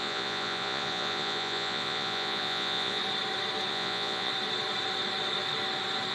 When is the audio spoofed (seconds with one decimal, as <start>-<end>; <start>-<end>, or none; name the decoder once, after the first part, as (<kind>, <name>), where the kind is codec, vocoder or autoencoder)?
0.0-3.0 (vocoder, Vocos); 3.7-4.3